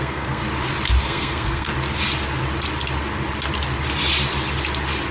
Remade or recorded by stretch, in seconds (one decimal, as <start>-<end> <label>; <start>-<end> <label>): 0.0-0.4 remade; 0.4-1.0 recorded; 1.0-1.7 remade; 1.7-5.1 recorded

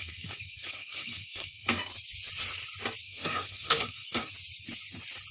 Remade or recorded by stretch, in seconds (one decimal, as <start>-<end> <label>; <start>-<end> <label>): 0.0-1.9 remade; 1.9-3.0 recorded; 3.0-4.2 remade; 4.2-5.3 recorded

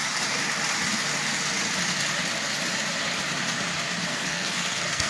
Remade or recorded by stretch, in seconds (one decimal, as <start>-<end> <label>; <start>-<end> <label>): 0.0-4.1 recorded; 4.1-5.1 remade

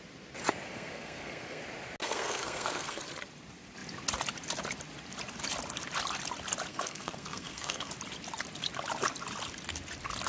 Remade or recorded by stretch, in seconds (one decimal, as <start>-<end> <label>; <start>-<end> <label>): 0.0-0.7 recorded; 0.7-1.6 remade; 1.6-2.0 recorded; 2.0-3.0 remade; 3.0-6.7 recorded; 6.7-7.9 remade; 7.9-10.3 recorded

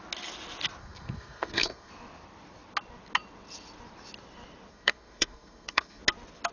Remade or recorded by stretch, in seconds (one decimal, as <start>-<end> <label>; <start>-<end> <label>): 0.0-0.8 recorded; 0.8-1.9 remade; 1.9-4.7 recorded; 4.7-6.0 remade; 6.0-6.5 recorded